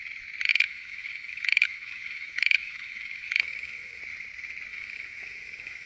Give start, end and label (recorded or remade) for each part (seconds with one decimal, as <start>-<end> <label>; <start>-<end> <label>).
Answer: 0.0-0.5 recorded; 0.5-4.0 remade; 4.0-4.7 recorded; 4.7-5.9 remade